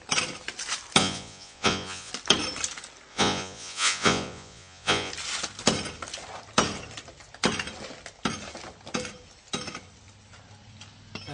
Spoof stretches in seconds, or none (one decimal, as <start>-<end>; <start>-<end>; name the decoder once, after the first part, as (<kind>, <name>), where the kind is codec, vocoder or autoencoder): 1.0-2.1 (vocoder, Vocos); 3.1-5.1